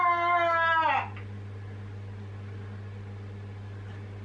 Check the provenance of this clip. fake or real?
real